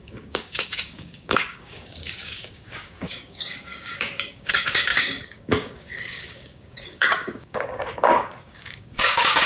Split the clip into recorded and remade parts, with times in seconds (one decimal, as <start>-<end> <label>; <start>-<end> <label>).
0.0-9.5 remade